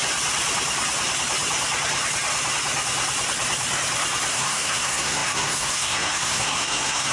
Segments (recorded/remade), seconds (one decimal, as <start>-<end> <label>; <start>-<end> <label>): 0.0-4.3 recorded; 4.3-7.1 remade